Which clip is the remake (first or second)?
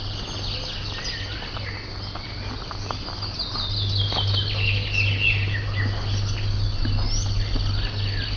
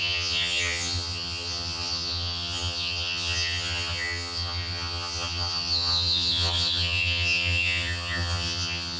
second